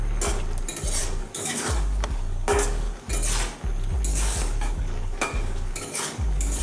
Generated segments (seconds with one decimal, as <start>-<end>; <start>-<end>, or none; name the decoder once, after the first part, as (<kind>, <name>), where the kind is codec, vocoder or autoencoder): 1.0-3.1 (codec, DAC); 4.1-6.6